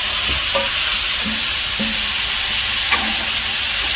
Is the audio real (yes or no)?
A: yes